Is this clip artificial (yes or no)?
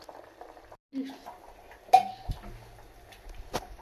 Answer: no